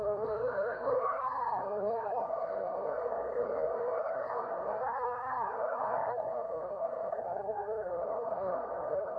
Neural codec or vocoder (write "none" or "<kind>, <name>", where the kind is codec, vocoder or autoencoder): codec, SNAC